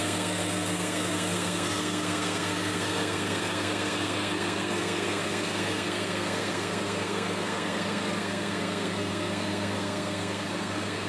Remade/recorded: remade